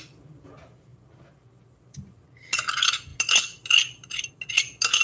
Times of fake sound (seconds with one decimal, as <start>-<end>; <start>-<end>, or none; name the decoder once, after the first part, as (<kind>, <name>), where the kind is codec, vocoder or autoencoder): none